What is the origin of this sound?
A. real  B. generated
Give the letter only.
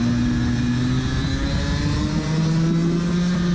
A